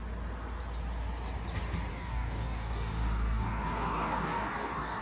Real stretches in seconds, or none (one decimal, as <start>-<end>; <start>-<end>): 0.0-1.9